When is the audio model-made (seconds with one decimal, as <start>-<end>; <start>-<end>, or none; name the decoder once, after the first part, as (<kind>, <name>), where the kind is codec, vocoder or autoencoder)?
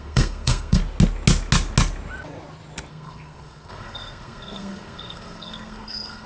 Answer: 0.0-0.8 (codec, SNAC); 2.9-6.3